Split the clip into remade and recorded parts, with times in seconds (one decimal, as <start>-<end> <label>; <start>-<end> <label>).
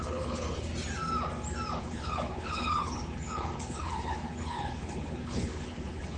0.0-0.7 remade; 0.7-1.8 recorded; 1.8-6.2 remade